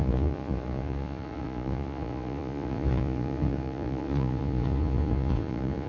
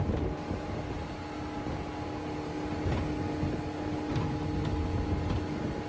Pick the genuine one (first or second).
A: second